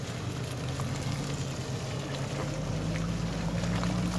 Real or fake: real